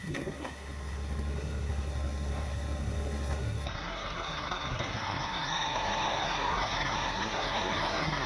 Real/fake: fake